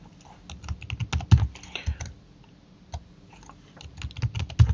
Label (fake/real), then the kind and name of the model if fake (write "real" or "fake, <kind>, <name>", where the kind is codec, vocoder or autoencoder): real